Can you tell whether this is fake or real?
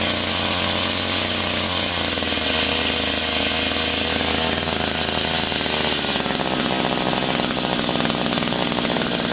real